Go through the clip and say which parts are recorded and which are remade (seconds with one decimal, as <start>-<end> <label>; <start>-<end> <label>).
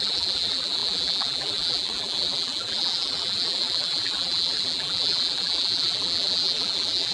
0.0-7.1 remade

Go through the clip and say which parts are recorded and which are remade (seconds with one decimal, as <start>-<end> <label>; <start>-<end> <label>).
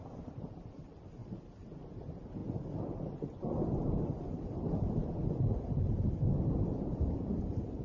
0.0-1.2 remade; 1.2-1.8 recorded; 1.8-7.8 remade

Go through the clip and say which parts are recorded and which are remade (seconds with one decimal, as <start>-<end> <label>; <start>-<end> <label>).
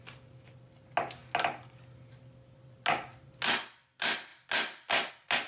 0.0-5.5 recorded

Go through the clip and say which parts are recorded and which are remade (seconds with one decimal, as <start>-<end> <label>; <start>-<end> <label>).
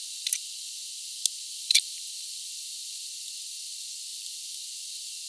0.0-1.5 recorded; 1.5-3.1 remade; 3.1-4.1 recorded; 4.1-4.7 remade; 4.7-5.3 recorded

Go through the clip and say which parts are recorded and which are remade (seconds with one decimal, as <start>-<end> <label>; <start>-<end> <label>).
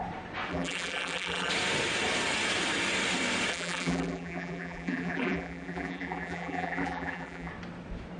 0.0-0.5 recorded; 0.5-1.5 remade; 1.5-3.5 recorded; 3.5-7.5 remade; 7.5-8.2 recorded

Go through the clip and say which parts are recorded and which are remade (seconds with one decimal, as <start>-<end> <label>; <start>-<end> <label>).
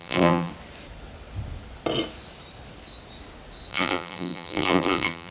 0.0-0.5 remade; 0.5-3.7 recorded; 3.7-5.3 remade